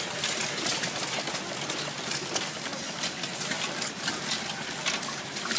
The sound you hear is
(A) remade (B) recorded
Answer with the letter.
B